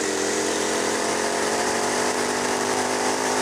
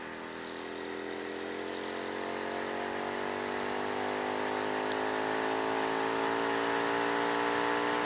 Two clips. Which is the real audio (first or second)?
second